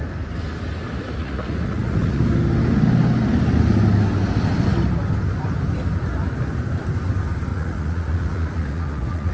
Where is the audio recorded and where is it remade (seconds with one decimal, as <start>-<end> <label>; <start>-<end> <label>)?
0.0-1.2 recorded; 1.2-2.2 remade; 2.2-7.5 recorded; 7.5-9.3 remade